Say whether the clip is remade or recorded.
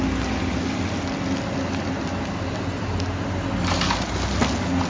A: recorded